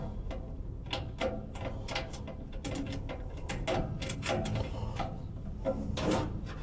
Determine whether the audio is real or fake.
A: real